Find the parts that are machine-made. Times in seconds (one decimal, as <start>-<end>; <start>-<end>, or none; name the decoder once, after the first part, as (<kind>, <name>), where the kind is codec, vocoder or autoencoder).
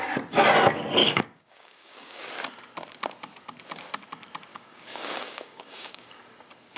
1.0-2.2 (codec, DAC); 4.5-6.1